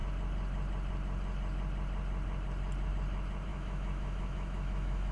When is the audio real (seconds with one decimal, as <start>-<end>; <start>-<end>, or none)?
0.0-3.5